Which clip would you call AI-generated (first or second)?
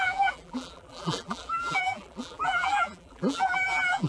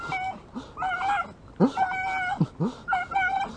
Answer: first